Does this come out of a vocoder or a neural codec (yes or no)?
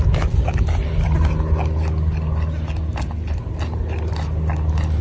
no